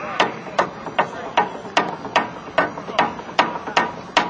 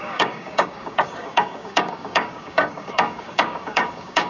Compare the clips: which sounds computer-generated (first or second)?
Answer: second